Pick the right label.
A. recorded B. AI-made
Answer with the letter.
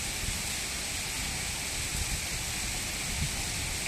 A